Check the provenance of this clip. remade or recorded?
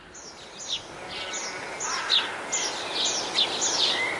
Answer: recorded